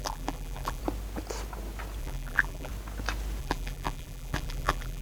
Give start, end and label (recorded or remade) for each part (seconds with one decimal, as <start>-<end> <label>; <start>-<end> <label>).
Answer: 0.0-0.8 remade; 0.8-2.0 recorded; 2.0-2.7 remade; 2.7-3.4 recorded; 3.4-5.0 remade